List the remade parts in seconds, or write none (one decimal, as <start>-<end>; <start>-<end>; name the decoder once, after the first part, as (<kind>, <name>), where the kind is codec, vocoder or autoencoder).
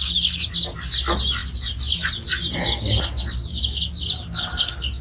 none